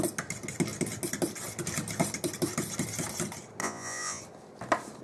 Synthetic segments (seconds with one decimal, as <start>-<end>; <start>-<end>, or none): 3.6-4.2